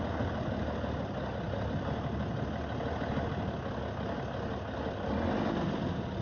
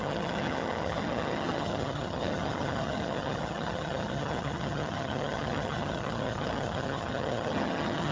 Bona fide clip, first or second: first